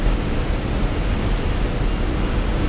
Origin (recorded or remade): recorded